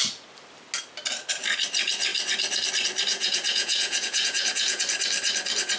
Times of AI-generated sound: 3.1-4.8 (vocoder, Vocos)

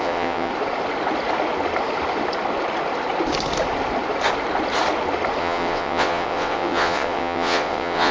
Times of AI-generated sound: 0.0-0.5 (vocoder, WaveNeXt); 5.4-8.1

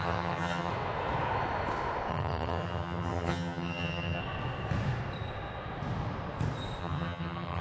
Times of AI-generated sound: 0.0-0.7 (vocoder, HiFi-GAN); 2.1-4.2; 6.8-7.6

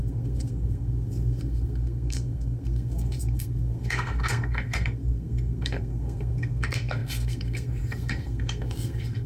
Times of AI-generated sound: 0.0-9.3 (codec, SNAC)

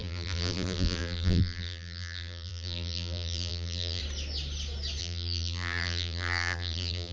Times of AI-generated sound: 0.0-4.0 (vocoder, BigVGAN v2); 5.0-7.1

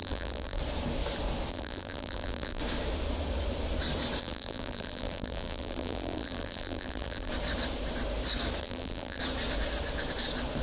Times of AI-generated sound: 0.0-0.6 (vocoder, BigVGAN v2); 1.5-2.6; 4.2-7.3; 8.6-9.2